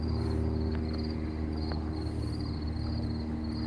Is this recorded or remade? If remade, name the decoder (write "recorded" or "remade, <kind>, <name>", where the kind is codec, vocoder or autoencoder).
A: recorded